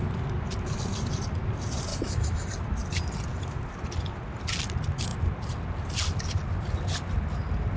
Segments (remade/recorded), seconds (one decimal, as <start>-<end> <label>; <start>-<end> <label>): 0.0-1.9 recorded; 1.9-2.5 remade; 2.5-7.8 recorded